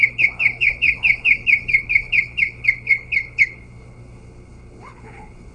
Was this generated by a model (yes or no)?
yes